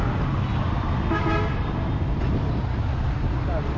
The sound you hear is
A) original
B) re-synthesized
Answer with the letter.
A